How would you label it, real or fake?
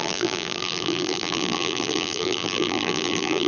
fake